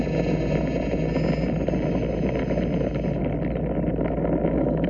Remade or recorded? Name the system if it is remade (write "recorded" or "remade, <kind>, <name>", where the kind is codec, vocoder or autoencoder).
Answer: recorded